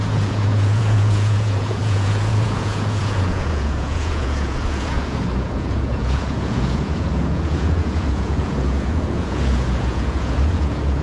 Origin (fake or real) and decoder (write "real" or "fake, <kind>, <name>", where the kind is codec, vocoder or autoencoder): fake, vocoder, Vocos